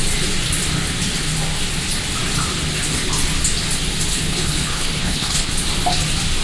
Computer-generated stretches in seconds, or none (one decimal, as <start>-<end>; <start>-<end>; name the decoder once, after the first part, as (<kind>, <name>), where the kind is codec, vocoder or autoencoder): 4.1-5.5 (codec, HILCodec)